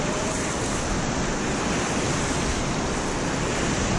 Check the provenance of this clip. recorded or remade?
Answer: remade